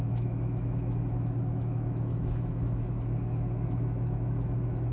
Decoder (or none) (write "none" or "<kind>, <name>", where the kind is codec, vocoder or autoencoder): autoencoder, DAC-VAE